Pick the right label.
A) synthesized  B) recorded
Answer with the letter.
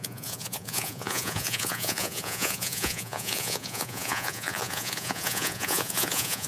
A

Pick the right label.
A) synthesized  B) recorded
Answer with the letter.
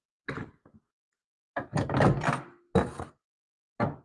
B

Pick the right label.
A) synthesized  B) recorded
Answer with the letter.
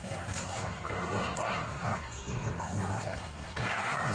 A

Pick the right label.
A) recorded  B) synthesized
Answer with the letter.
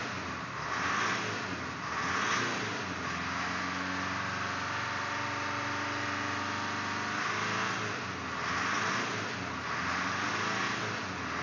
A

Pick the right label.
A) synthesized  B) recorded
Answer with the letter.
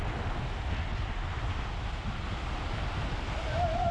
B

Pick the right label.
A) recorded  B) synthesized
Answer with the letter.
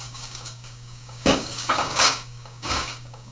B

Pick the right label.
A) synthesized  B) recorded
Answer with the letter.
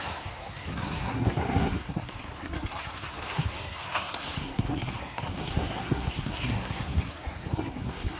A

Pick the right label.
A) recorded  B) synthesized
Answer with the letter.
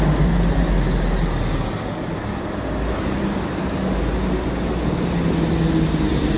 A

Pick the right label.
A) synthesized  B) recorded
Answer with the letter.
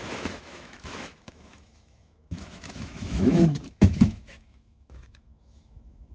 A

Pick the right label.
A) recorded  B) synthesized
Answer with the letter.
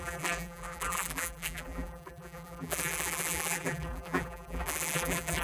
B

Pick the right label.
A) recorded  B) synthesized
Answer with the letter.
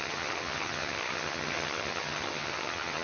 B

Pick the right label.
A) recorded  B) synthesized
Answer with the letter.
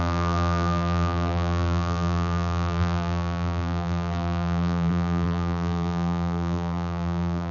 B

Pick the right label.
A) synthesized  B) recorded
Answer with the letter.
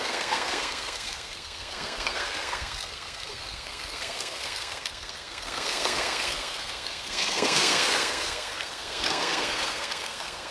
A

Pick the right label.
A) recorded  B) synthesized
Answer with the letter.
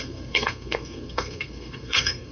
B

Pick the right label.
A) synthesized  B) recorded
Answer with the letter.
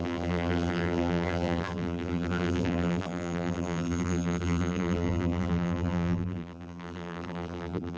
A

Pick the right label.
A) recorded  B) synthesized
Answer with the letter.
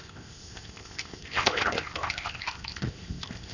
B